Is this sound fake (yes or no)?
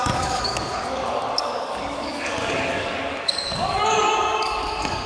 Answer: yes